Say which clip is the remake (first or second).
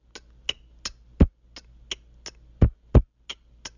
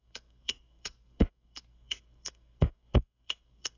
second